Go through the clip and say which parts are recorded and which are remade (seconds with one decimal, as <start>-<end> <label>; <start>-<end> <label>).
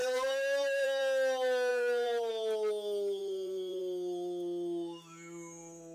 0.0-1.0 remade; 1.0-1.7 recorded; 1.7-2.3 remade; 2.3-3.2 recorded; 3.2-3.8 remade; 3.8-5.9 recorded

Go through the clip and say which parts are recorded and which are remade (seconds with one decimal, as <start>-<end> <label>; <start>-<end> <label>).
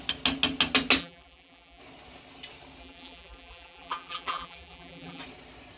0.0-1.0 recorded; 1.0-1.8 remade; 1.8-2.8 recorded; 2.8-5.2 remade; 5.2-5.8 recorded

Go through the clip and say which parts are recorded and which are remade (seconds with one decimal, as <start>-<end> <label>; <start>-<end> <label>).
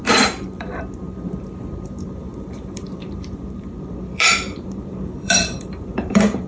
0.0-6.5 remade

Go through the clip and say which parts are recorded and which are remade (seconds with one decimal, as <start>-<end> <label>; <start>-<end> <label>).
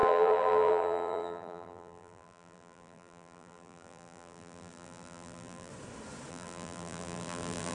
0.0-5.7 remade; 5.7-6.3 recorded; 6.3-7.7 remade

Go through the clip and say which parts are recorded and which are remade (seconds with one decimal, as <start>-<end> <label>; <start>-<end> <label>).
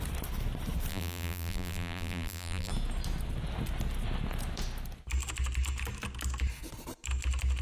0.0-0.9 recorded; 0.9-2.7 remade; 2.7-7.6 recorded